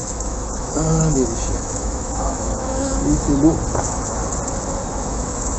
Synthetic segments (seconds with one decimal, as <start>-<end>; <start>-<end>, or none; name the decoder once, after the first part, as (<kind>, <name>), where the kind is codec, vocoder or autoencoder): 0.0-2.9 (autoencoder, DAC-VAE); 3.7-4.2; 4.9-5.6